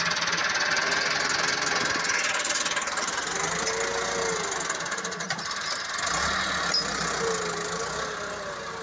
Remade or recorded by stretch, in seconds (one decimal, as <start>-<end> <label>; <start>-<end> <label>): 0.0-8.8 recorded